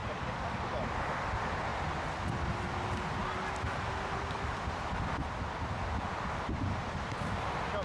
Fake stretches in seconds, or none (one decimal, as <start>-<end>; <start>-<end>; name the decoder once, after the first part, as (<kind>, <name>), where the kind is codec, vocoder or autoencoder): none